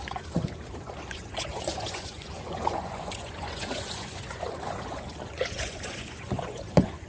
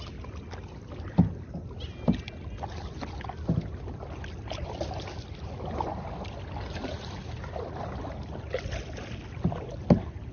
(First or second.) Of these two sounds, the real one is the second